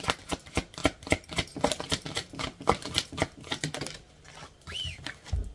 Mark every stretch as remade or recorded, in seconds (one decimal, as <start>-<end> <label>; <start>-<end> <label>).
0.0-5.5 recorded

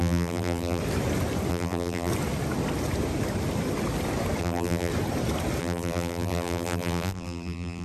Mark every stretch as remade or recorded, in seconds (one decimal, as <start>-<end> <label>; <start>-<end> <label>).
0.0-0.8 remade; 0.8-1.5 recorded; 1.5-2.1 remade; 2.1-4.4 recorded; 4.4-4.9 remade; 4.9-5.6 recorded; 5.6-7.8 remade

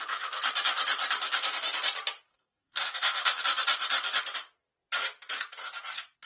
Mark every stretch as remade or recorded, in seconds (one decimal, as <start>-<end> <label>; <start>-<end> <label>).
0.0-2.3 recorded; 2.3-3.4 remade; 3.4-6.3 recorded

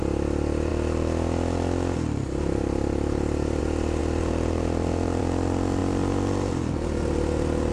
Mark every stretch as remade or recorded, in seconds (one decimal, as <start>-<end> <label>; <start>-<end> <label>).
0.0-7.7 recorded

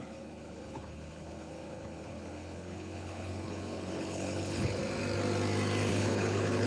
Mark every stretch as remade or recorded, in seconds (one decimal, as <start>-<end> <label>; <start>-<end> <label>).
0.0-4.8 remade; 4.8-5.9 recorded; 5.9-6.7 remade

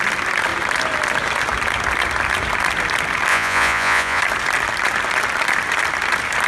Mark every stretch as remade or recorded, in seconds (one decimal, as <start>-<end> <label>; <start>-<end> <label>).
0.0-3.3 recorded; 3.3-4.2 remade; 4.2-6.5 recorded

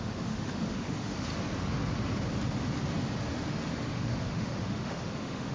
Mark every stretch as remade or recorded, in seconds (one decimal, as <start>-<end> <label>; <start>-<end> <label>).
0.0-1.3 remade; 1.3-3.7 recorded; 3.7-5.5 remade

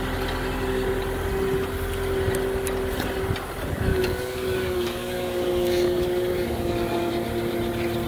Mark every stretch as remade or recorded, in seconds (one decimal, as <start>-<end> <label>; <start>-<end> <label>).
0.0-3.9 recorded; 3.9-7.1 remade; 7.1-8.1 recorded